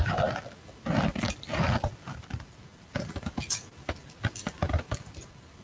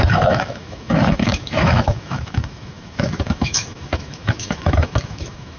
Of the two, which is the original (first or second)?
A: first